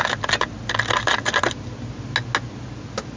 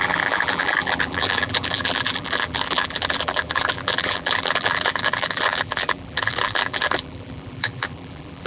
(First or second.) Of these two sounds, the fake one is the second